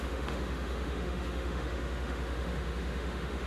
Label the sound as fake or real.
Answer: fake